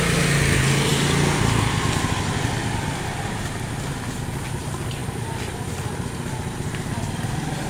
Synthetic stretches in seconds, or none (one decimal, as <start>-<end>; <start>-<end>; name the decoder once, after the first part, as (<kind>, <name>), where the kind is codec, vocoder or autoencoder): none